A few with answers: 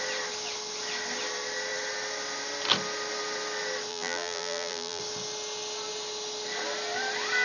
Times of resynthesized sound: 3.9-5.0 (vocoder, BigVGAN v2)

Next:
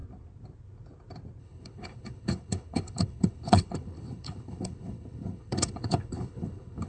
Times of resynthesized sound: 1.4-6.9 (codec, HILCodec)